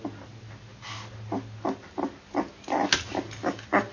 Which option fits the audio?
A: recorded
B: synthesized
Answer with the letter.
A